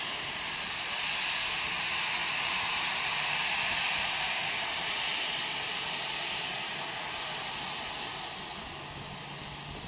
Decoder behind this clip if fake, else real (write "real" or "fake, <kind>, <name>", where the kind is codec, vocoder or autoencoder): real